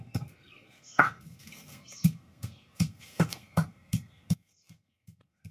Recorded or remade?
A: remade